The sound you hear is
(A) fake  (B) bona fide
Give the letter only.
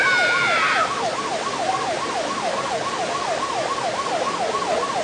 B